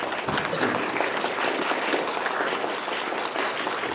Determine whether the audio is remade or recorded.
recorded